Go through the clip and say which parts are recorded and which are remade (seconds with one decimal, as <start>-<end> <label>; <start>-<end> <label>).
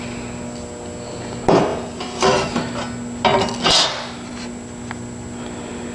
0.0-1.7 recorded; 1.7-2.6 remade; 2.6-5.9 recorded